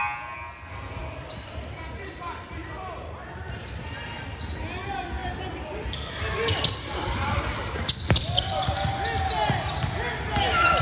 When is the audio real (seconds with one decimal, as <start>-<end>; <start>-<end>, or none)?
0.0-1.0; 2.1-5.2; 8.5-10.8